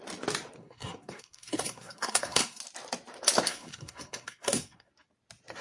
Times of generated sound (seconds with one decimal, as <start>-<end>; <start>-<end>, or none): 0.6-2.6; 3.5-4.9